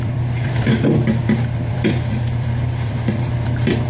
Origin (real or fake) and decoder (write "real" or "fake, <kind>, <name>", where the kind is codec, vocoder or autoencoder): fake, vocoder, BigVGAN v2